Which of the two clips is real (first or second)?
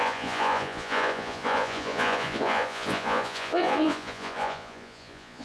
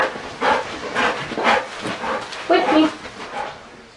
second